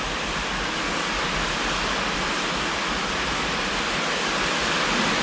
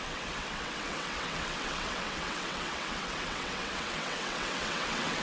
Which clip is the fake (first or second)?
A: second